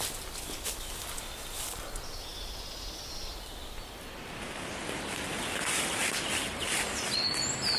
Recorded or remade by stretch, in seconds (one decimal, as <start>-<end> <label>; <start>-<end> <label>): 0.0-7.8 recorded